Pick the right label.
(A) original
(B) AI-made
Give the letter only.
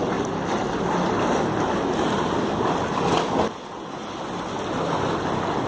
A